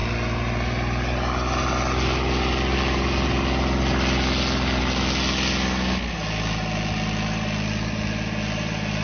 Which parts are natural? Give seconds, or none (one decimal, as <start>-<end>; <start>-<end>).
0.0-9.0